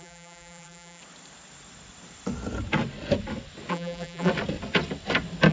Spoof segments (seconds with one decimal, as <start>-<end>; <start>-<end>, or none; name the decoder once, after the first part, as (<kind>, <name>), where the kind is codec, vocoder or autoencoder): 0.0-1.0 (vocoder, BigVGAN v2); 3.7-4.3